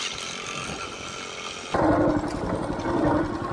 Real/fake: real